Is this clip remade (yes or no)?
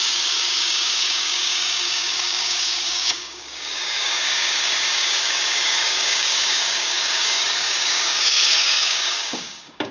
yes